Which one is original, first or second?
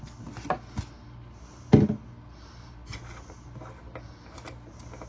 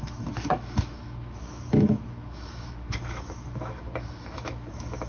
first